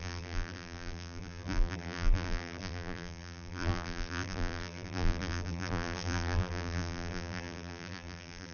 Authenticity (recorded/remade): remade